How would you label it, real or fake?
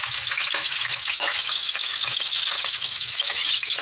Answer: fake